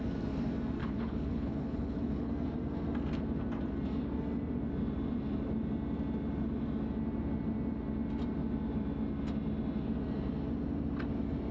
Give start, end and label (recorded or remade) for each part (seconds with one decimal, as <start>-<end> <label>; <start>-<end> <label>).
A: 0.0-0.8 recorded; 0.8-2.3 remade; 2.3-11.5 recorded